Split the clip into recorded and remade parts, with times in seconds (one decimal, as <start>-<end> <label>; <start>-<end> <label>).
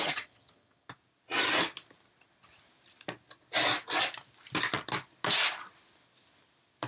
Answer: 0.0-0.9 remade; 0.9-6.9 recorded